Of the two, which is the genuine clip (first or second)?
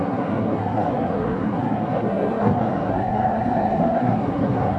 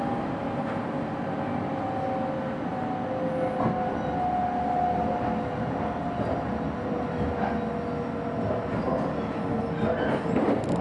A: second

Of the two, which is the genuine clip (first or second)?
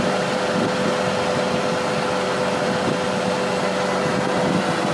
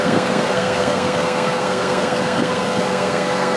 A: first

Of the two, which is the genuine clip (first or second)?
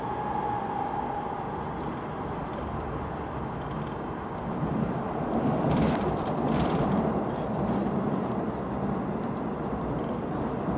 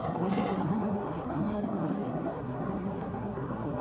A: first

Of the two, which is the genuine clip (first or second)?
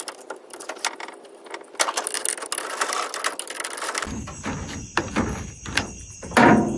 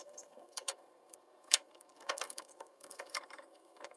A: first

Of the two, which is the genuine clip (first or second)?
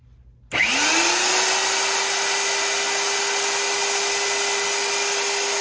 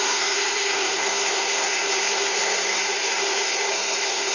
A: first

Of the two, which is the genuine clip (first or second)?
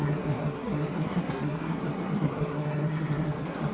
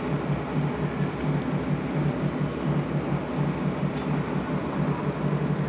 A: second